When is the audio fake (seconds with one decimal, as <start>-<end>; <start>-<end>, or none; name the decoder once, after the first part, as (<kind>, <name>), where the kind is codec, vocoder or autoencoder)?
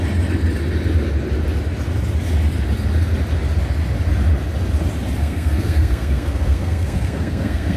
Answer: 5.2-7.8 (codec, SNAC)